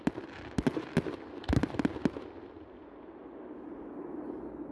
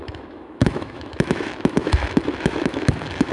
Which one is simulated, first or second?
second